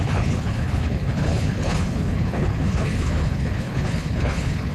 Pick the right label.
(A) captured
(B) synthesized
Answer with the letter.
B